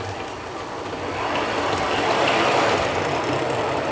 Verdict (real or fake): real